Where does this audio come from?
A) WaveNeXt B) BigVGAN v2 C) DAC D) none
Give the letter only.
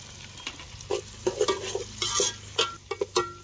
D